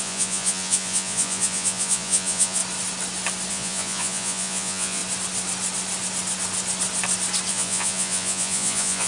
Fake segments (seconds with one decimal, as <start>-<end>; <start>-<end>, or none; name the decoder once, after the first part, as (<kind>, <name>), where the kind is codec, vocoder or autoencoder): 0.0-2.6 (vocoder, Vocos); 3.5-5.0; 7.5-9.1